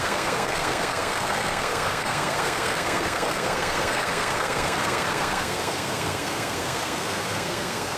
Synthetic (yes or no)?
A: yes